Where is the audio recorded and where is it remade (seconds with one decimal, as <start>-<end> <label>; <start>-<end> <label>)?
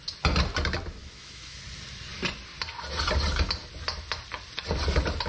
0.0-1.0 recorded; 1.0-1.6 remade; 1.6-5.3 recorded